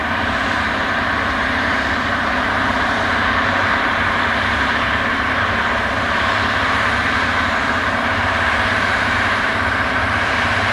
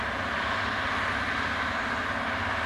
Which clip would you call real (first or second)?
second